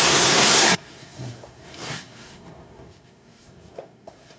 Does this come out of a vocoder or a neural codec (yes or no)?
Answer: yes